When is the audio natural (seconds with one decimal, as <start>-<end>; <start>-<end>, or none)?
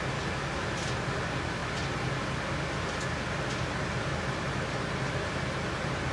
0.0-6.1